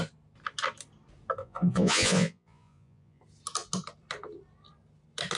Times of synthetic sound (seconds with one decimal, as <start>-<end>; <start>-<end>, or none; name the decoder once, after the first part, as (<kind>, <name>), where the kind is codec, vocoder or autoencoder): 1.4-3.2 (vocoder, Vocos)